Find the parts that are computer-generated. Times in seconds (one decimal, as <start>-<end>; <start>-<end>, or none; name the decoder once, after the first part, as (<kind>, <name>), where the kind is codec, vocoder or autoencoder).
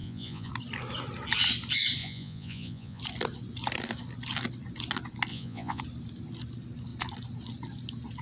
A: 0.0-0.5 (vocoder, Vocos); 2.0-3.0; 5.3-5.8